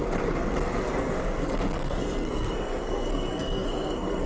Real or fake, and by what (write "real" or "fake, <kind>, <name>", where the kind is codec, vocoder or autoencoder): fake, codec, SNAC